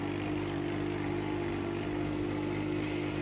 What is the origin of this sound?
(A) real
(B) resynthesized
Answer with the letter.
A